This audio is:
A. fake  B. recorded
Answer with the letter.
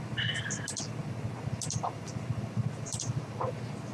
B